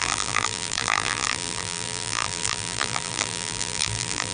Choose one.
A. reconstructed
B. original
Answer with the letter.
A